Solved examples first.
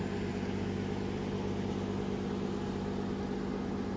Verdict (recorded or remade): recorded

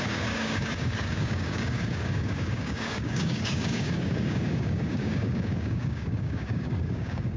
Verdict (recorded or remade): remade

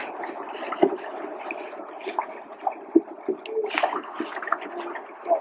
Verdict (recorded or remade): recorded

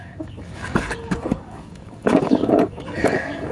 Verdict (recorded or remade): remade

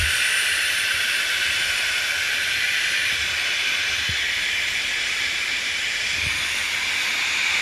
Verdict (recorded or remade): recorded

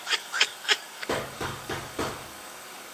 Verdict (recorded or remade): remade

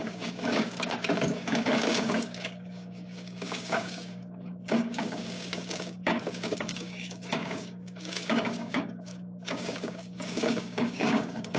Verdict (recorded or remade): remade